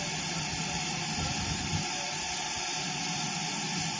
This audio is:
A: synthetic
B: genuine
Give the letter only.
B